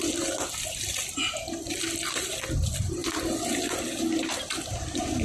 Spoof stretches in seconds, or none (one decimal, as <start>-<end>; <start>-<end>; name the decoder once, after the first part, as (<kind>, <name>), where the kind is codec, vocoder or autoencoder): none